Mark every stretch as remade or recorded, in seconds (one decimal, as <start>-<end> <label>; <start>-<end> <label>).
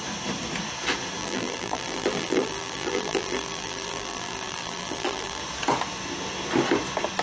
0.0-1.2 recorded; 1.2-5.4 remade; 5.4-7.2 recorded